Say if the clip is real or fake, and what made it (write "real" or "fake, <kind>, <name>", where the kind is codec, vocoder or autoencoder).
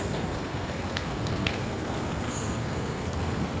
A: fake, codec, SNAC